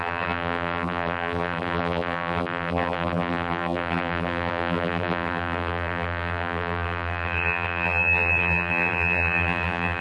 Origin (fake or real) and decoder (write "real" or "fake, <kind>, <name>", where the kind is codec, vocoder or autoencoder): fake, vocoder, BigVGAN v2